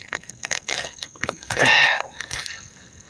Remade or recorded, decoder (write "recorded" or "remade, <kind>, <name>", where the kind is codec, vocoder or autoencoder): remade, codec, SNAC